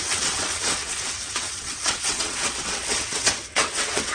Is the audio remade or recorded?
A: remade